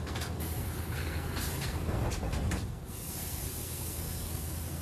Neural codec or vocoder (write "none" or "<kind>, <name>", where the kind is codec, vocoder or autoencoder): codec, SNAC